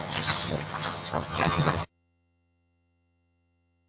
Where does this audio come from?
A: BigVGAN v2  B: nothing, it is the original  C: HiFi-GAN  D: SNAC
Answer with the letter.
C